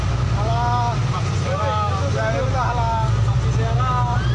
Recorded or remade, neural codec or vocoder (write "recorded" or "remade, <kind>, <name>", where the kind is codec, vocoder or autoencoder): recorded